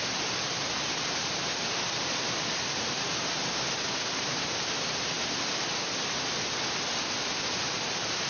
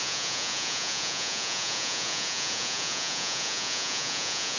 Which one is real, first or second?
first